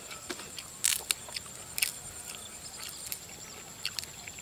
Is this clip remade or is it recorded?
recorded